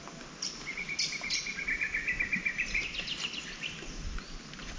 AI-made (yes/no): no